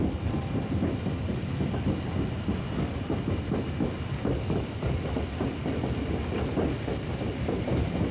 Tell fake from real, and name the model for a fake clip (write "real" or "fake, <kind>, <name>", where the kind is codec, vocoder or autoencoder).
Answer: real